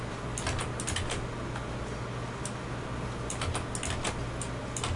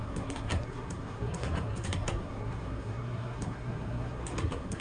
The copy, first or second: second